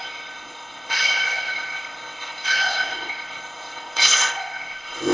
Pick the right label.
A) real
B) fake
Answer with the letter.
B